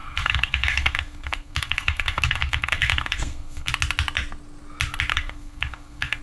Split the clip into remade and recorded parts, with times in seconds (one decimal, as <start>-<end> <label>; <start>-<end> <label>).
0.0-3.7 remade; 3.7-5.1 recorded; 5.1-6.2 remade